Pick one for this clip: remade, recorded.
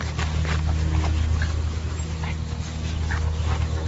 recorded